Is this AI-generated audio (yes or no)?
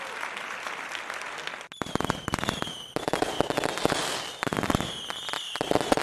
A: no